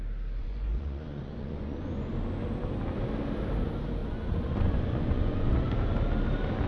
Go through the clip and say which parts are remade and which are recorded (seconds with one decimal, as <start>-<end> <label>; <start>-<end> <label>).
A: 0.0-0.4 recorded; 0.4-2.1 remade; 2.1-4.0 recorded; 4.0-5.5 remade; 5.5-6.7 recorded